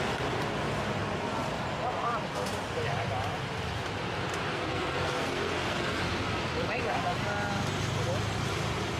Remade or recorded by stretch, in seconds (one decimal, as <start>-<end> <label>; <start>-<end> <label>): 0.0-4.5 recorded; 4.5-6.0 remade; 6.0-9.0 recorded